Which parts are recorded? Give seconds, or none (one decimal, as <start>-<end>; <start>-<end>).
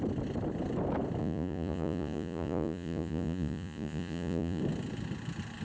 0.0-1.2; 4.6-5.6